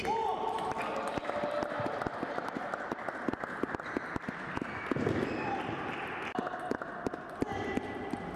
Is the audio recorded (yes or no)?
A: yes